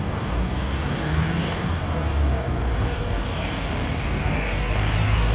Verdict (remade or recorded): remade